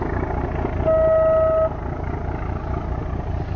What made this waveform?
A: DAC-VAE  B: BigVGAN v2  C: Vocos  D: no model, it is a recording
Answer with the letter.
D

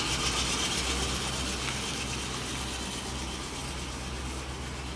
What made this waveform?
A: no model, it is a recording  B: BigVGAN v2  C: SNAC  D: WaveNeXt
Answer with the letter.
A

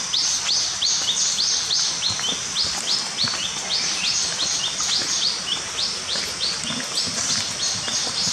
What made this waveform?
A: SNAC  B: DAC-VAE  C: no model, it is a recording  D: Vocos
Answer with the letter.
C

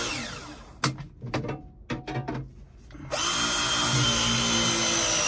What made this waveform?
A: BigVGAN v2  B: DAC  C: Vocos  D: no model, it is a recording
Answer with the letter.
D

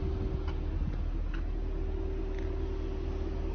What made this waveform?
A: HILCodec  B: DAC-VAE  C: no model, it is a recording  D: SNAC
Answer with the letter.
C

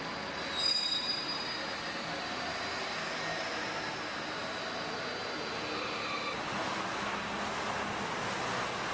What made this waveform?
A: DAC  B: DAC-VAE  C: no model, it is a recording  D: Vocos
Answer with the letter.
C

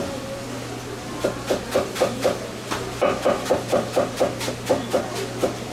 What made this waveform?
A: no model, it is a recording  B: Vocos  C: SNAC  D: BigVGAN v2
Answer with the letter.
A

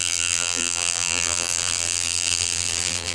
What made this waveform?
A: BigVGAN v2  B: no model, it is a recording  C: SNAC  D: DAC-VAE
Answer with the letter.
A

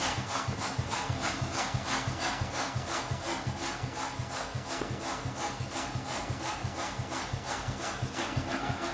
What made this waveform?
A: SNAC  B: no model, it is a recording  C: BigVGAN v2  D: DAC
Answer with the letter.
A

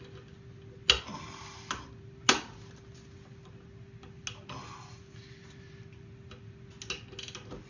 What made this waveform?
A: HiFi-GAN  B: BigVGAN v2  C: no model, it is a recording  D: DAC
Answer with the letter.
C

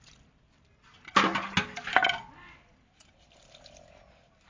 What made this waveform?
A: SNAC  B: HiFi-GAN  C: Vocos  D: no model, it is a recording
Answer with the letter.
D